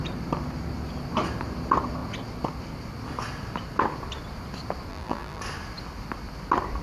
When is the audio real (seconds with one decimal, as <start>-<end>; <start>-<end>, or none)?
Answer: 0.0-4.9; 5.4-6.8